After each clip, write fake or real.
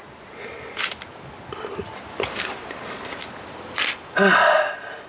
real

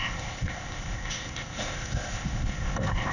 fake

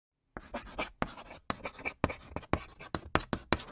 real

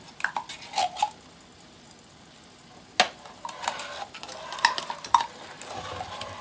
real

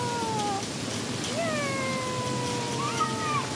real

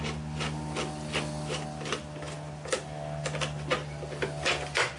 real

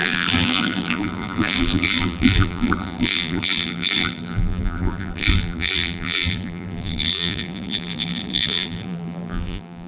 fake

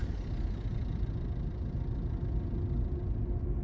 real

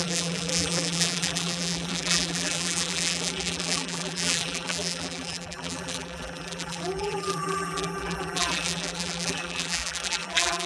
fake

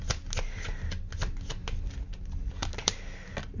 real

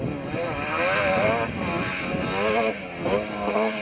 real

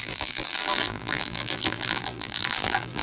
fake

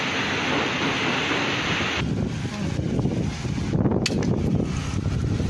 real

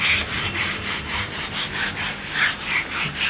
real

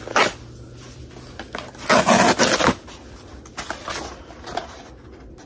real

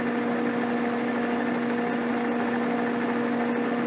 real